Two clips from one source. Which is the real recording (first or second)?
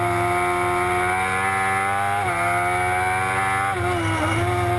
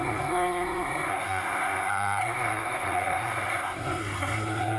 first